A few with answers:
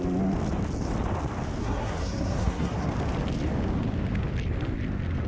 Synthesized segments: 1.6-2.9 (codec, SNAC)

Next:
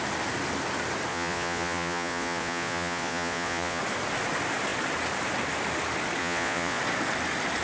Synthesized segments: 1.1-3.8 (vocoder, Vocos); 6.2-6.8

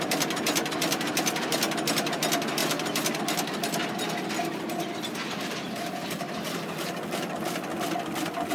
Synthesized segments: 2.6-3.2 (vocoder, BigVGAN v2); 5.2-7.3

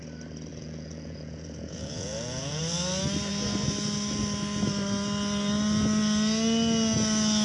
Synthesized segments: 0.5-2.6 (vocoder, Vocos)

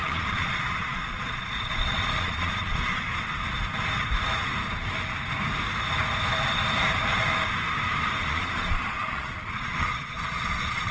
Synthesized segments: 0.0-3.1 (vocoder, Vocos); 8.2-10.9

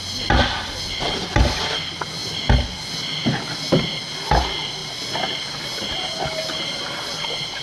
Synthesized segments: none